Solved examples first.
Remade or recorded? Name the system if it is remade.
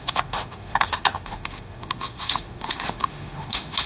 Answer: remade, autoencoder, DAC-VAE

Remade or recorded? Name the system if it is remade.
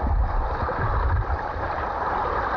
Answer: recorded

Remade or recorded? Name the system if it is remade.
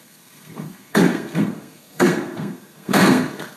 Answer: remade, codec, SNAC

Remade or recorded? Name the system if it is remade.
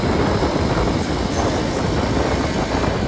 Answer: recorded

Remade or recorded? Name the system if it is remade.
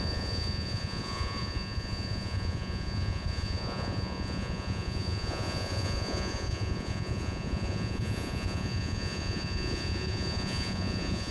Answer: remade, vocoder, Vocos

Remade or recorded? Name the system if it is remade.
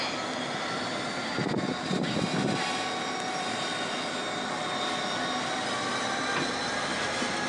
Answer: recorded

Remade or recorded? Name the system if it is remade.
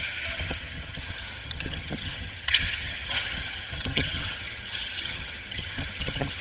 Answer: remade, vocoder, HiFi-GAN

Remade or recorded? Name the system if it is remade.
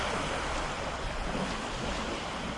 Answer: recorded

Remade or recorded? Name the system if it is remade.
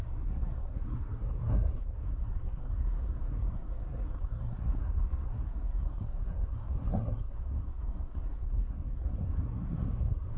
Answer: remade, codec, SNAC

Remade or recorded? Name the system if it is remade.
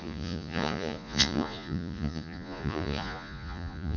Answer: remade, vocoder, Vocos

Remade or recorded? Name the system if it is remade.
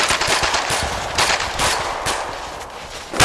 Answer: recorded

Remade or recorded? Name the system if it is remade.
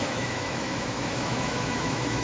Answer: remade, autoencoder, DAC-VAE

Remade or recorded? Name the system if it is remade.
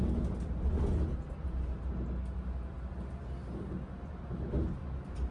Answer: recorded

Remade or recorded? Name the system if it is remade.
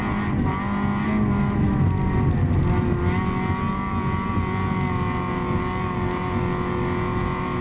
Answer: recorded